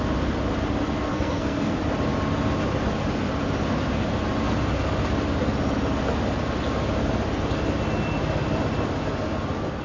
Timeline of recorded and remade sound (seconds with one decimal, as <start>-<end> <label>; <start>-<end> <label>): 0.0-1.1 recorded; 1.1-1.7 remade; 1.7-9.8 recorded